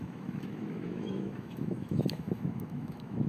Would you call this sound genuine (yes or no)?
no